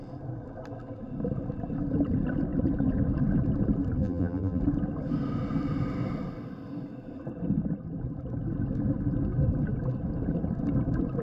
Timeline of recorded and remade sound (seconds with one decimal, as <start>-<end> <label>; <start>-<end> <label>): 0.0-4.0 recorded; 4.0-4.6 remade; 4.6-11.2 recorded